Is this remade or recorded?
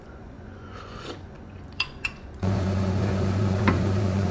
remade